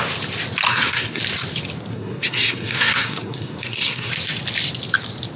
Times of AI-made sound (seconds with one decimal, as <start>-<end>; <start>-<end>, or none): 0.7-1.2; 1.9-4.1